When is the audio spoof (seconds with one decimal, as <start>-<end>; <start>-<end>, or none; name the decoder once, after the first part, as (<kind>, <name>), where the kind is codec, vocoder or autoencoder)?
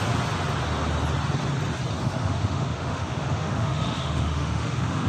2.0-5.1 (autoencoder, DAC-VAE)